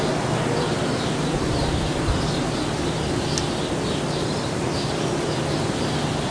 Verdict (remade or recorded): recorded